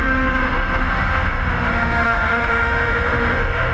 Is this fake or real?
fake